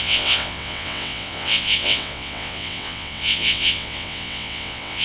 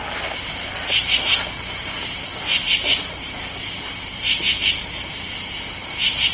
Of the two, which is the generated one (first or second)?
first